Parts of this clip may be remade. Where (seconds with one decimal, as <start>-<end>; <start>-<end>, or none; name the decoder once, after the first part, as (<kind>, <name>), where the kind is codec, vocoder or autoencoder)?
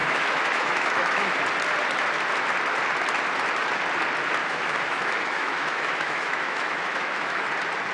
0.0-1.4 (autoencoder, DAC-VAE); 4.4-7.5